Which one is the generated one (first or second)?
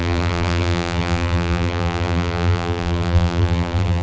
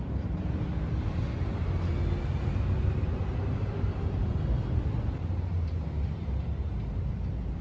first